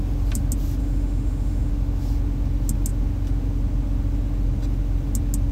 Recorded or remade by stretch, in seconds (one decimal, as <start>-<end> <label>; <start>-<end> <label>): 0.0-0.8 recorded; 0.8-1.7 remade; 1.7-5.5 recorded